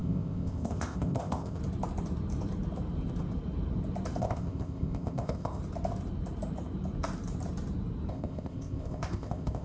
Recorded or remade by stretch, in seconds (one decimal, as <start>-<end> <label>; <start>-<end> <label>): 0.0-1.6 remade; 1.6-4.2 recorded; 4.2-5.6 remade; 5.6-8.1 recorded; 8.1-9.6 remade